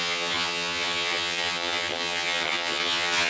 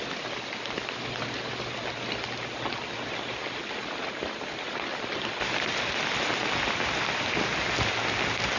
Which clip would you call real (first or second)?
second